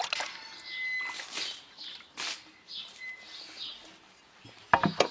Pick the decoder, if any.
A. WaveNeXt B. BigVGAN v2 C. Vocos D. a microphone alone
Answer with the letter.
D